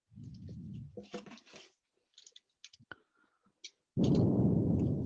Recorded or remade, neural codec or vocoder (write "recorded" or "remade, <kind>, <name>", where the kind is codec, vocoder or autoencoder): recorded